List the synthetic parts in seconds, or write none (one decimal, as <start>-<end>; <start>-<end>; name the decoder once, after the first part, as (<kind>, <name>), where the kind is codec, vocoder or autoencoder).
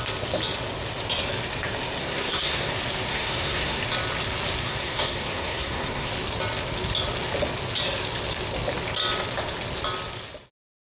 2.0-2.7 (codec, SNAC); 3.1-3.8; 4.6-6.1